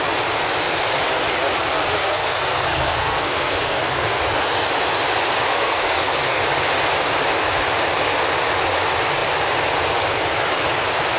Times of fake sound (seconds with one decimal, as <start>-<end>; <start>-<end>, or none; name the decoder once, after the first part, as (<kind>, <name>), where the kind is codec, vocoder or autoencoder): 2.0-4.2 (codec, SNAC); 5.5-6.4